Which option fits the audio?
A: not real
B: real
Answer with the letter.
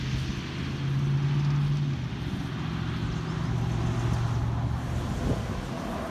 B